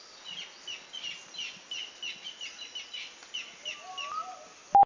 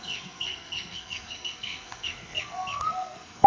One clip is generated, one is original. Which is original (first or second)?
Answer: first